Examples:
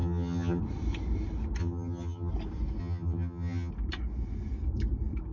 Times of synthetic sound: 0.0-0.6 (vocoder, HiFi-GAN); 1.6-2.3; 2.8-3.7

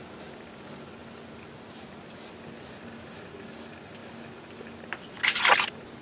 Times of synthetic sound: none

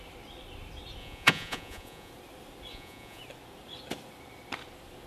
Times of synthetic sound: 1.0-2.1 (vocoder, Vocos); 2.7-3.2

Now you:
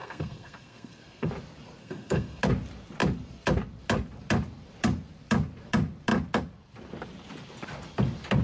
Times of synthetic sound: 0.0-1.3 (codec, SNAC); 1.8-2.4

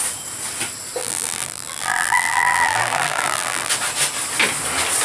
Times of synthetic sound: 1.0-3.7 (vocoder, BigVGAN v2)

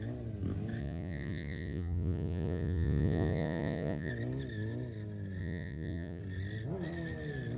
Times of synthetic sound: 0.8-4.1 (vocoder, Vocos); 5.4-6.2

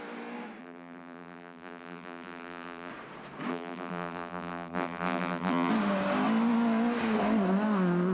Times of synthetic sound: 0.6-2.9 (vocoder, BigVGAN v2); 3.5-5.7